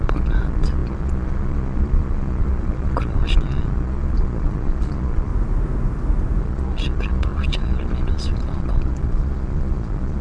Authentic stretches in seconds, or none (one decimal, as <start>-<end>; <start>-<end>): 5.3-6.4